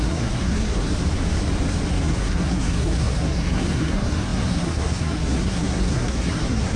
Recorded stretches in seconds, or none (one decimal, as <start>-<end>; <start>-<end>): 0.9-1.9